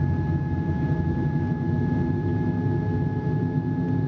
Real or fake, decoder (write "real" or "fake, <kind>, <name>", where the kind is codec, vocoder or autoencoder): real